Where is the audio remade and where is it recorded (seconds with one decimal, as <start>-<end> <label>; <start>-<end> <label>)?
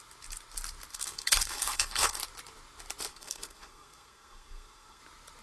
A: 0.0-0.9 recorded; 0.9-2.2 remade; 2.2-3.1 recorded; 3.1-5.0 remade; 5.0-5.4 recorded